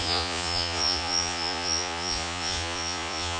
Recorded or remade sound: remade